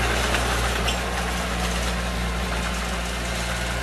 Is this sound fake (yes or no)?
no